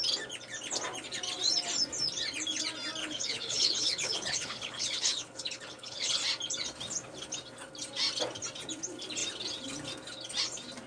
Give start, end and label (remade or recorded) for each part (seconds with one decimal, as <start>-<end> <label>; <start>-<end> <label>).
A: 0.0-3.0 recorded; 3.0-6.2 remade; 6.2-10.9 recorded

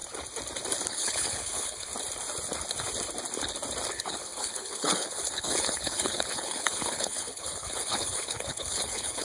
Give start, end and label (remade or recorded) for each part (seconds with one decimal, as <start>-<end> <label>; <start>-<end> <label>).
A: 0.0-0.9 recorded; 0.9-1.9 remade; 1.9-3.9 recorded; 3.9-9.2 remade

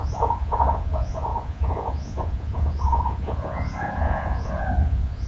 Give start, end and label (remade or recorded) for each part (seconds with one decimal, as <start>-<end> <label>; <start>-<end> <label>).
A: 0.0-5.3 remade

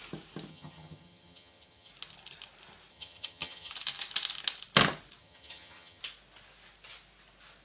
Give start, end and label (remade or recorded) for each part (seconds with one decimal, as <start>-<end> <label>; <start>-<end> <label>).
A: 0.0-0.5 recorded; 0.5-1.9 remade; 1.9-2.9 recorded; 2.9-3.7 remade; 3.7-5.2 recorded; 5.2-6.0 remade; 6.0-7.6 recorded

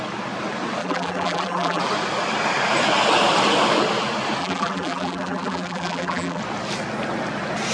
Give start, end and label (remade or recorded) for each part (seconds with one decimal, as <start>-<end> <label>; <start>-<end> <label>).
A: 0.0-0.8 recorded; 0.8-1.8 remade; 1.8-4.4 recorded; 4.4-6.4 remade; 6.4-7.7 recorded